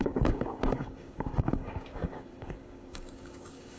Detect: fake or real fake